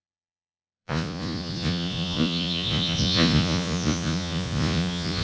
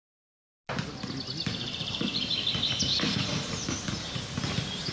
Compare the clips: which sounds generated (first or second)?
first